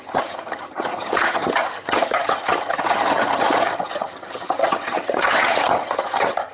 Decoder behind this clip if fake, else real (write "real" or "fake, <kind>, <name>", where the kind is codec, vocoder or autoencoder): fake, vocoder, HiFi-GAN